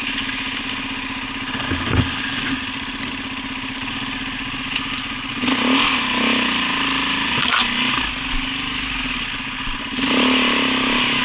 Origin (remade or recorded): recorded